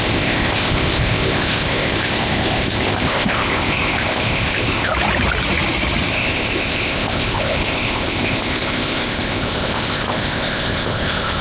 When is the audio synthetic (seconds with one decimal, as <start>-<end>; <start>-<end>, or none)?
0.0-4.9; 6.1-11.4